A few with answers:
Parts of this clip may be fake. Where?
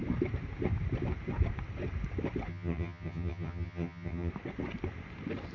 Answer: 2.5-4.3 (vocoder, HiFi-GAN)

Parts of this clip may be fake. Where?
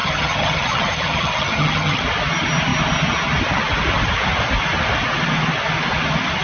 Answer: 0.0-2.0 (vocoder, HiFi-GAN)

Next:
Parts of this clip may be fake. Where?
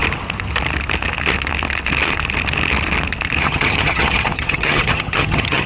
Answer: 3.4-5.7 (vocoder, HiFi-GAN)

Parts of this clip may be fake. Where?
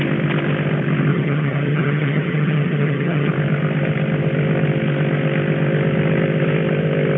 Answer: 1.1-3.3 (vocoder, HiFi-GAN)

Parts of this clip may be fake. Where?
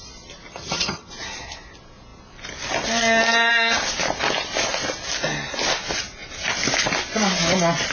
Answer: 0.5-1.1 (vocoder, HiFi-GAN)